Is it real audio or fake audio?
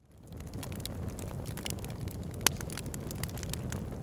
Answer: real